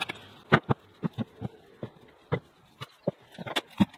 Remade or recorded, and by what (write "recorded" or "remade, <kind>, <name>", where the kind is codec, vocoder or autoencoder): recorded